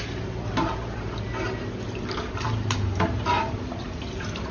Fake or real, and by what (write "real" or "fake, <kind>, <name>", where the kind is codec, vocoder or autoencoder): real